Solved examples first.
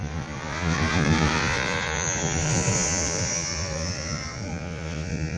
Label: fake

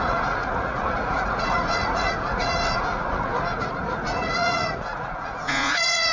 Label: fake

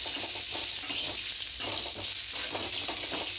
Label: real